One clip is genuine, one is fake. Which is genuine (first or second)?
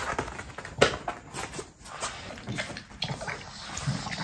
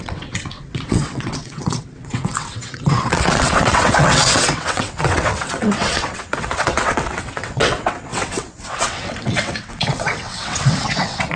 first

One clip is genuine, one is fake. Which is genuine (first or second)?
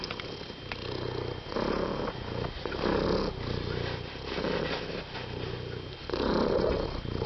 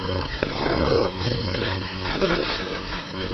first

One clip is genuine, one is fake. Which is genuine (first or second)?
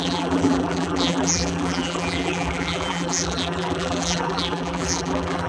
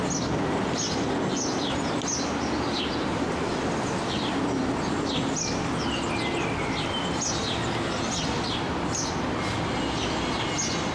second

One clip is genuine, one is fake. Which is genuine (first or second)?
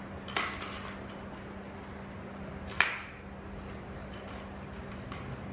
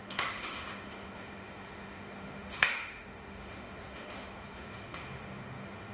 first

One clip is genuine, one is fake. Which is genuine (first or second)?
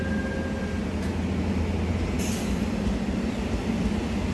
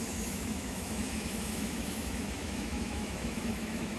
first